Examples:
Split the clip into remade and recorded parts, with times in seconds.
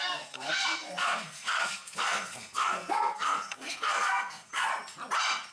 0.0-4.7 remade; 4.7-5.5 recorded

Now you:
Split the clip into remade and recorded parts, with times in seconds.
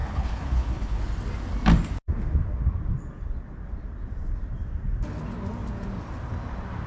0.0-1.0 remade; 1.0-6.9 recorded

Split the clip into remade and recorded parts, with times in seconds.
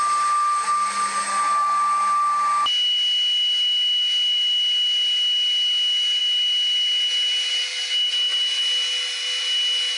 0.0-10.0 recorded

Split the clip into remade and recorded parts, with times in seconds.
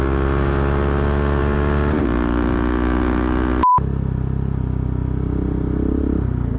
0.0-6.6 recorded